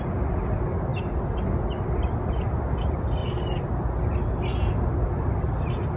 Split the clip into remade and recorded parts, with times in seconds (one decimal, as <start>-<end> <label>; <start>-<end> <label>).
0.0-3.2 recorded; 3.2-6.0 remade